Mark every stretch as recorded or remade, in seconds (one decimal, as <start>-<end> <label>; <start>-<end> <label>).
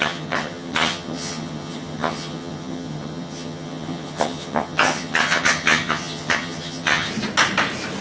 0.0-7.1 remade; 7.1-8.0 recorded